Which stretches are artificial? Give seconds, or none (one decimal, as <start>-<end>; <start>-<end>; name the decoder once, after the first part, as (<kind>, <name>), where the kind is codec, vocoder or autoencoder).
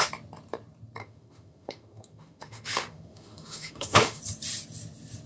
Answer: 1.0-4.2 (autoencoder, DAC-VAE)